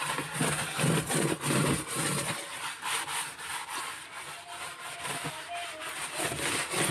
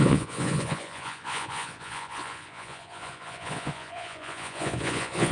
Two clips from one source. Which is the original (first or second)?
first